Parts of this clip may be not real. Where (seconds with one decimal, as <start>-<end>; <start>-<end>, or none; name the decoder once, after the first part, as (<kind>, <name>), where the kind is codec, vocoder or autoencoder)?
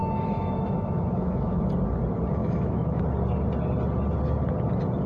0.0-1.7 (autoencoder, DAC-VAE); 2.4-3.0